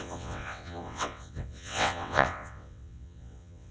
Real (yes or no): no